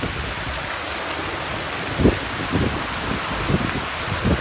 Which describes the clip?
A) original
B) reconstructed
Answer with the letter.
A